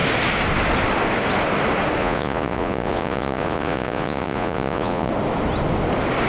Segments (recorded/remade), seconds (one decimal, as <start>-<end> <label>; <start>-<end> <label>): 0.0-2.0 recorded; 2.0-5.1 remade; 5.1-6.3 recorded